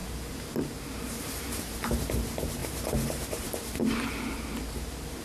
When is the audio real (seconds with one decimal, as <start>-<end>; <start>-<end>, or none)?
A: none

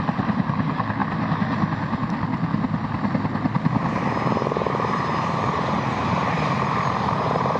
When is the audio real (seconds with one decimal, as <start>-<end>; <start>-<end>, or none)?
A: 1.0-4.7

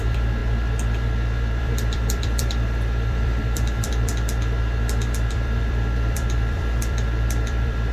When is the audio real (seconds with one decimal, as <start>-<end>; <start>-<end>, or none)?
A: 0.4-1.6; 4.1-5.3